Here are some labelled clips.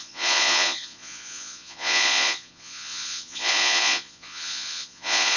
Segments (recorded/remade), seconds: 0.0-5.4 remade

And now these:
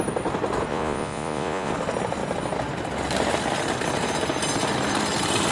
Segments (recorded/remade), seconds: 0.0-0.7 recorded; 0.7-1.7 remade; 1.7-5.5 recorded

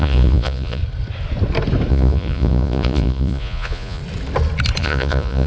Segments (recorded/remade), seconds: 0.0-0.8 remade; 0.8-1.9 recorded; 1.9-4.0 remade; 4.0-4.8 recorded; 4.8-5.5 remade

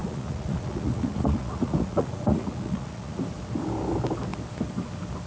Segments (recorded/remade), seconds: 0.0-3.2 remade; 3.2-5.3 recorded

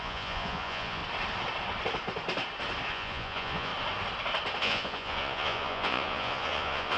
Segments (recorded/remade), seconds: 0.0-1.0 remade; 1.0-2.9 recorded; 2.9-3.7 remade; 3.7-4.6 recorded; 4.6-7.0 remade

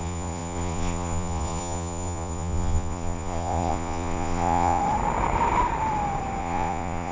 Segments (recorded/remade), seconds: 0.0-4.8 remade; 4.8-6.4 recorded; 6.4-7.1 remade